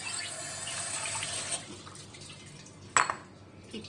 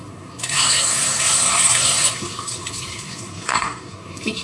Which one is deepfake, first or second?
second